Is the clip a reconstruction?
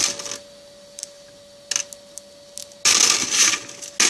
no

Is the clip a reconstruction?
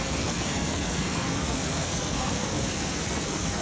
yes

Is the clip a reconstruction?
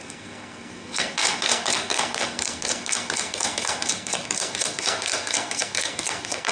yes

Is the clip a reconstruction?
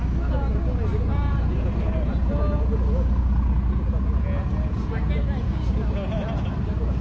no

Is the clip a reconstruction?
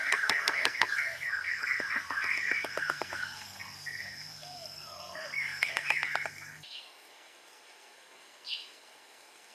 yes